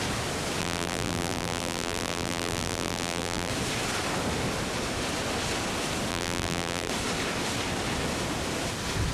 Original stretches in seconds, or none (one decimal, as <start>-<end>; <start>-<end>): 0.0-0.6; 3.5-6.1; 6.9-9.1